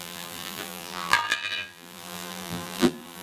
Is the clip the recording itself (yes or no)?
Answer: no